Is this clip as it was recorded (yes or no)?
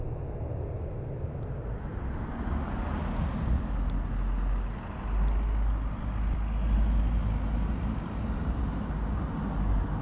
yes